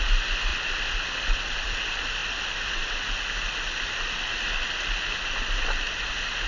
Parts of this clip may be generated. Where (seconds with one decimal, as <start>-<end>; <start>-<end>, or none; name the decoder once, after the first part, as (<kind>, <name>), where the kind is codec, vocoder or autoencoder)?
0.5-1.8 (vocoder, BigVGAN v2)